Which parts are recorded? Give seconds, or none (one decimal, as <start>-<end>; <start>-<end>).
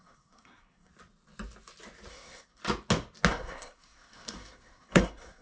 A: 0.9-2.1; 2.6-3.3